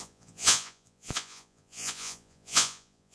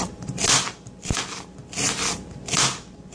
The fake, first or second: first